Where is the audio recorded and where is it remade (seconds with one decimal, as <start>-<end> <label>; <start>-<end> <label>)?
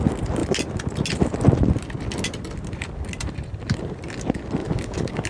0.0-4.6 recorded; 4.6-5.3 remade